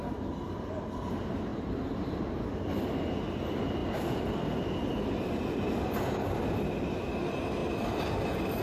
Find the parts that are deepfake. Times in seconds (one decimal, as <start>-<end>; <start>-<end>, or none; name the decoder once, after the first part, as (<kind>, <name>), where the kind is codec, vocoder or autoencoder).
1.5-3.2 (vocoder, BigVGAN v2); 3.8-4.6